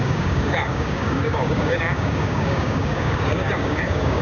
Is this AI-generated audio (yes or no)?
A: yes